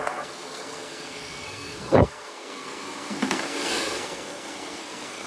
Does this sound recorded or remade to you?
remade